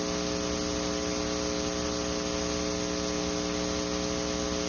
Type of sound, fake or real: real